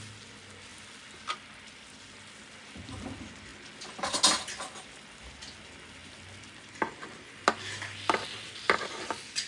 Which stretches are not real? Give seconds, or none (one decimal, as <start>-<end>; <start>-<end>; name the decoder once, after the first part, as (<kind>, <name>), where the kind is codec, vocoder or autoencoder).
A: none